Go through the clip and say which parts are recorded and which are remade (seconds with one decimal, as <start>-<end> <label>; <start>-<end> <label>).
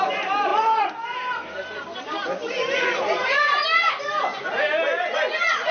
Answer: 0.0-0.5 recorded; 0.5-3.9 remade; 3.9-5.7 recorded